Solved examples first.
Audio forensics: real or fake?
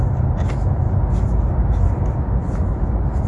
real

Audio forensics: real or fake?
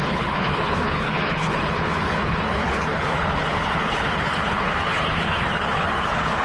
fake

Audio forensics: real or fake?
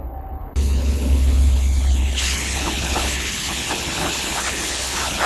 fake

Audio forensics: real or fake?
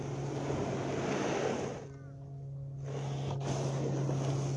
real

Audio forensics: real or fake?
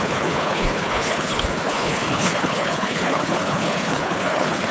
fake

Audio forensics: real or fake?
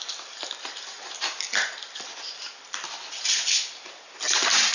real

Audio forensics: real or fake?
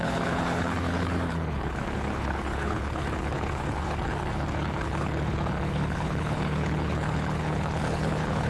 fake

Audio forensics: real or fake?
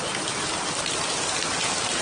real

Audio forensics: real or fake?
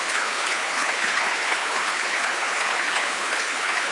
fake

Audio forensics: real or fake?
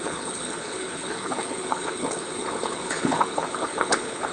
fake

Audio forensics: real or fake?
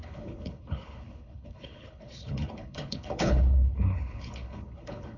fake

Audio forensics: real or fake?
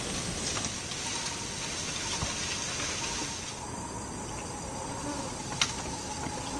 real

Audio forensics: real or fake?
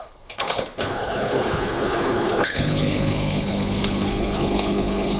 fake